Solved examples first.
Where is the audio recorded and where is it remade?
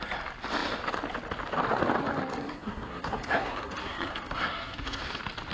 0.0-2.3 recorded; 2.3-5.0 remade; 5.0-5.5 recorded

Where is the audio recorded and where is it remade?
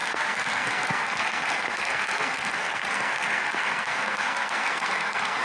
0.0-5.4 remade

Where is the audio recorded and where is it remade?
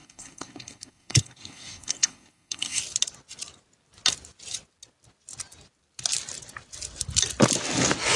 0.0-2.8 remade; 2.8-8.2 recorded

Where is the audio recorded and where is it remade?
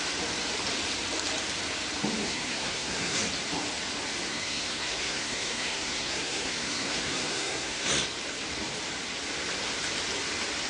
0.0-2.2 recorded; 2.2-3.2 remade; 3.2-4.3 recorded; 4.3-7.9 remade; 7.9-10.7 recorded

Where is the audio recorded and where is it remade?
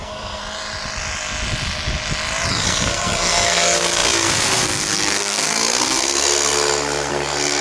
0.0-0.4 remade; 0.4-2.5 recorded; 2.5-7.6 remade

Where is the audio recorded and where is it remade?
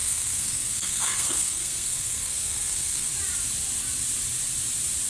0.0-3.1 remade; 3.1-5.1 recorded